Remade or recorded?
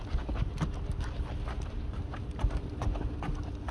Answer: recorded